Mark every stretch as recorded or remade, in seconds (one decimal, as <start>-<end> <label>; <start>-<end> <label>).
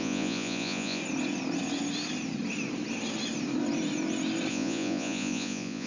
0.0-1.0 remade; 1.0-4.5 recorded; 4.5-5.9 remade